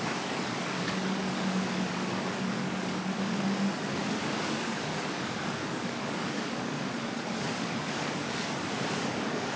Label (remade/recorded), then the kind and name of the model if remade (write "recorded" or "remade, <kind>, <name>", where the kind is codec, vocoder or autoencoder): remade, codec, DAC